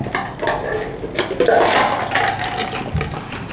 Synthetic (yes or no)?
no